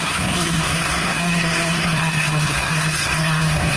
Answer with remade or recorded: remade